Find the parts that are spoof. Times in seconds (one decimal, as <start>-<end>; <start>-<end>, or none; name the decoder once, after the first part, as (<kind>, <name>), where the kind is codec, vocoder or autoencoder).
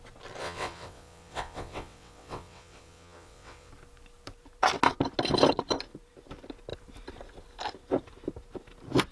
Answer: 0.4-3.7 (vocoder, WaveNeXt)